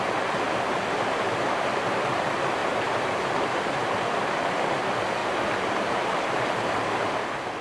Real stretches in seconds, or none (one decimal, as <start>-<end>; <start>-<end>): 0.0-2.6; 3.3-3.8; 4.8-5.2; 6.3-7.6